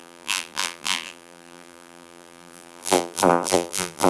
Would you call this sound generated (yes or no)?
yes